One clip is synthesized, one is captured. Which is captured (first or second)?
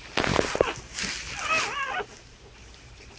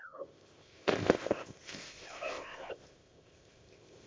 first